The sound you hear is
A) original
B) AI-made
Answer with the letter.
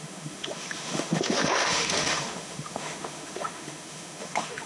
B